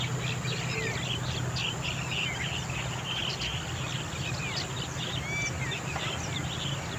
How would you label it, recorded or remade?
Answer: recorded